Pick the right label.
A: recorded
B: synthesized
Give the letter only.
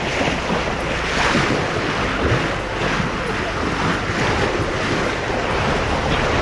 A